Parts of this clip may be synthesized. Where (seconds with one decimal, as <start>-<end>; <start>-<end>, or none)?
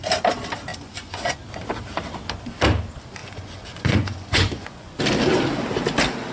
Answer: 0.7-1.4; 3.2-5.0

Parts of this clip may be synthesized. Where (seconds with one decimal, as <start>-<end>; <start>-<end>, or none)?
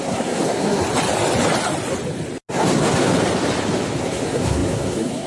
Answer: 0.0-0.8; 2.5-3.1; 4.0-5.3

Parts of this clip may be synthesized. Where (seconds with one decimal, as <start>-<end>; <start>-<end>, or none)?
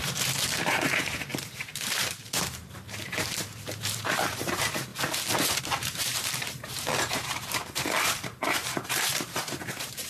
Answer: 0.0-4.9; 5.6-10.1